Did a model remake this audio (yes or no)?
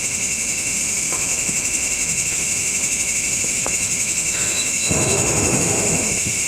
yes